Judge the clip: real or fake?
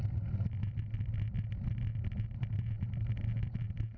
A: real